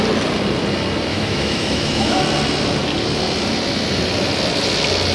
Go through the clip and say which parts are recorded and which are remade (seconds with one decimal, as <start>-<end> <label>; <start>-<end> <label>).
0.0-1.1 recorded; 1.1-2.2 remade; 2.2-5.1 recorded